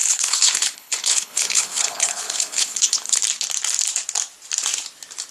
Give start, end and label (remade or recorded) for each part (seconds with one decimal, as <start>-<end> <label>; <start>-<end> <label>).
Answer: 0.0-3.2 remade; 3.2-5.3 recorded